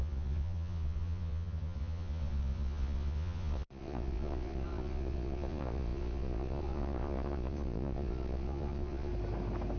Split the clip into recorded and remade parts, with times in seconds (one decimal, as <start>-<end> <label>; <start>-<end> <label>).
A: 0.0-9.1 remade; 9.1-9.8 recorded